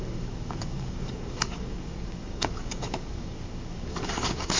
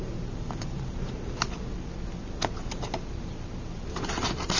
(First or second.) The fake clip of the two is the first